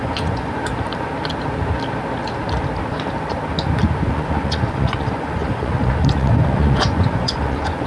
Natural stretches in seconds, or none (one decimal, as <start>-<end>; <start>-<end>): 0.6-4.1